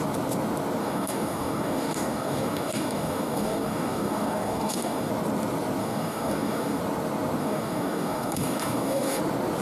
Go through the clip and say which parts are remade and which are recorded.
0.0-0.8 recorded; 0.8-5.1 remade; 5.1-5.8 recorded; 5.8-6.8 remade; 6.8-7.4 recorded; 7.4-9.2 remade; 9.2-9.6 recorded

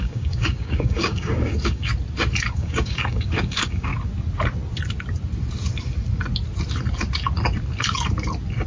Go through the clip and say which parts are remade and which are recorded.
0.0-1.9 remade; 1.9-2.5 recorded; 2.5-3.9 remade; 3.9-8.7 recorded

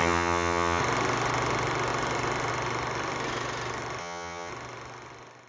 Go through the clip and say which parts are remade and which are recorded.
0.0-0.8 remade; 0.8-4.0 recorded; 4.0-4.5 remade; 4.5-5.5 recorded